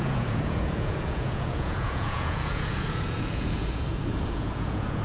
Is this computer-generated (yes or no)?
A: yes